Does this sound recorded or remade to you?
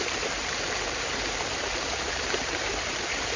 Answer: remade